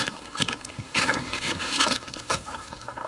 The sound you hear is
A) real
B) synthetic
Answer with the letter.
B